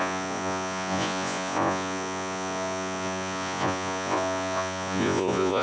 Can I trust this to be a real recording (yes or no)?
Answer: no